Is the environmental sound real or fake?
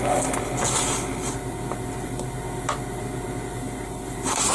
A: real